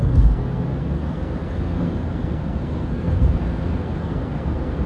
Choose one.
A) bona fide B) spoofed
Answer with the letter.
B